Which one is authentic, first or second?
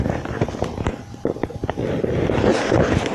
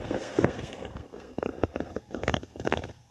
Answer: first